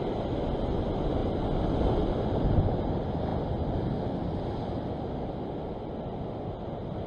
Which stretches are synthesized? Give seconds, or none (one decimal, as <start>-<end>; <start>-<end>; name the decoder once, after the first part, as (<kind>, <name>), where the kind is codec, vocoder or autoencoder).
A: none